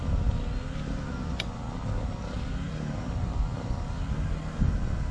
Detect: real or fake real